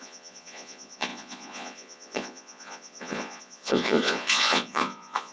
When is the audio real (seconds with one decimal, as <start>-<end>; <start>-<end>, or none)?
none